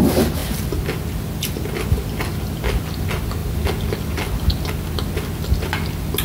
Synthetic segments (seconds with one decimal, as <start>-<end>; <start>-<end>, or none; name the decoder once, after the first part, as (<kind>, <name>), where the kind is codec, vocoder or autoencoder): none